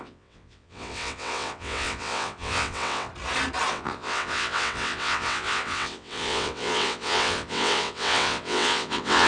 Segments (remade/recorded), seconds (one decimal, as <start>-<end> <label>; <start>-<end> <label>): 0.0-3.1 remade; 3.1-3.7 recorded; 3.7-9.3 remade